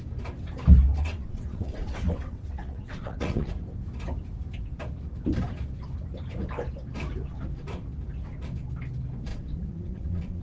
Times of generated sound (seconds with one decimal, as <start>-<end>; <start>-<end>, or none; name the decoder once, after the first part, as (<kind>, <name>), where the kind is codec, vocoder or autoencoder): 0.9-3.5 (vocoder, WaveNeXt); 9.3-10.4